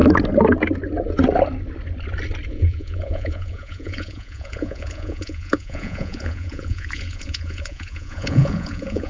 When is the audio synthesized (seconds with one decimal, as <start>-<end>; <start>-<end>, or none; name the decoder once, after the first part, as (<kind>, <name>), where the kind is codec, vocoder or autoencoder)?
2.5-9.1 (vocoder, Vocos)